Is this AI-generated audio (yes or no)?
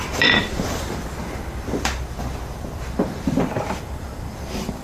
yes